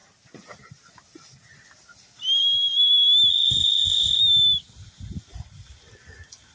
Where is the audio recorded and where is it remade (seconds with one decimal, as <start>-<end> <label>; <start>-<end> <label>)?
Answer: 0.0-3.3 recorded; 3.3-4.2 remade; 4.2-6.5 recorded